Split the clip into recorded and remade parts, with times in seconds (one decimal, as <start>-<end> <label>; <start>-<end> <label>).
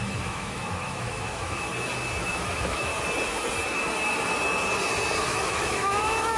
0.0-1.7 remade; 1.7-2.3 recorded; 2.3-2.9 remade; 2.9-5.2 recorded; 5.2-6.4 remade